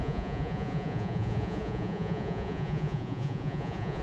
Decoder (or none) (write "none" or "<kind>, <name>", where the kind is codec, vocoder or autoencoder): vocoder, Vocos